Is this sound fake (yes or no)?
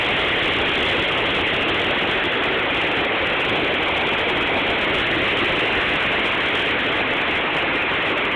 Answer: no